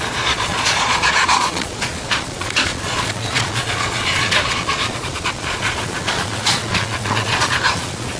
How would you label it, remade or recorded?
remade